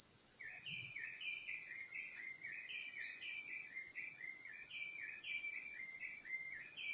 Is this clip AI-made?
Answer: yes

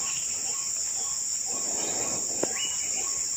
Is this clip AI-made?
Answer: no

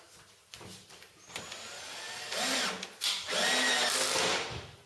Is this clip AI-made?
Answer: no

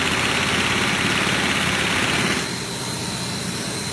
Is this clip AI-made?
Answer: no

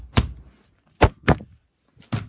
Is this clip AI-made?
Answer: no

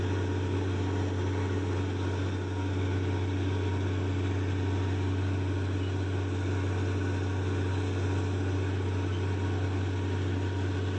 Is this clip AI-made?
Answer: no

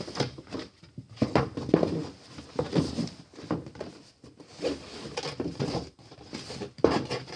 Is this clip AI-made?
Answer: no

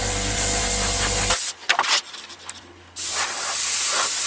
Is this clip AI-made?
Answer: no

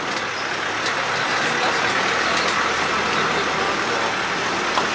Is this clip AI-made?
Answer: no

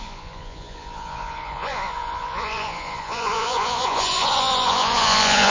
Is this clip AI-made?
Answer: yes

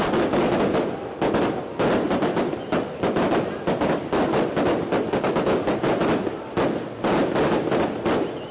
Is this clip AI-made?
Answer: no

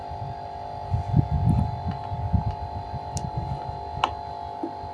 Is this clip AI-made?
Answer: no